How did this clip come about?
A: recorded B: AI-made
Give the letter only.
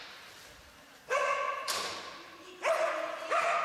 A